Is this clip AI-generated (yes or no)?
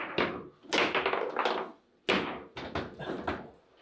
no